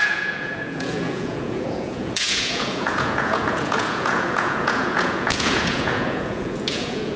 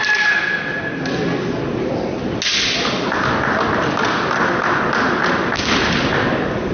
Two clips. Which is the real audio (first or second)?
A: second